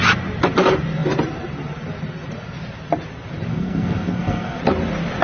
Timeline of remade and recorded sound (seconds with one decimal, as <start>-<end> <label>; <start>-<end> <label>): 0.0-3.5 recorded; 3.5-4.6 remade; 4.6-5.2 recorded